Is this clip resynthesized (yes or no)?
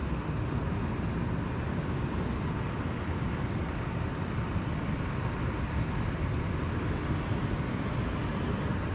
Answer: no